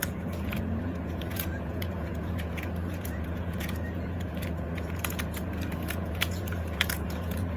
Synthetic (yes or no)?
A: yes